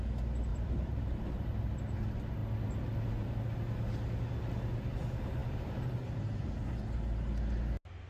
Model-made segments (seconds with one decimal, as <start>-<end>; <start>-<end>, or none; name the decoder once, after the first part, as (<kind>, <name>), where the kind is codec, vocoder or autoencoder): 0.5-1.6 (vocoder, BigVGAN v2); 5.4-6.5